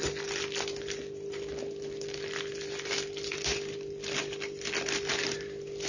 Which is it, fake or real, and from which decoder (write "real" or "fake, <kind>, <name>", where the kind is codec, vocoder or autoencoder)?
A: fake, vocoder, BigVGAN v2